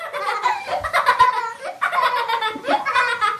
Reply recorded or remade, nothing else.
recorded